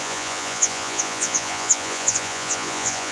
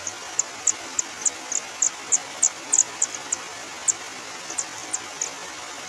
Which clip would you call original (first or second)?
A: second